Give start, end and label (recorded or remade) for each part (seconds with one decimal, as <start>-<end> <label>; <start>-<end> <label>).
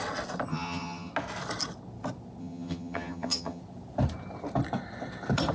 0.0-0.5 recorded; 0.5-1.1 remade; 1.1-2.4 recorded; 2.4-3.6 remade; 3.6-5.5 recorded